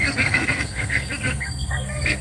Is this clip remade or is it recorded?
remade